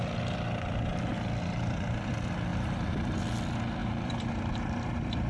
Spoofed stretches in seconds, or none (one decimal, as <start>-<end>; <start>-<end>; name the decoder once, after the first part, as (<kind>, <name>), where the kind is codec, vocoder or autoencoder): 2.5-3.2 (vocoder, BigVGAN v2); 3.8-5.3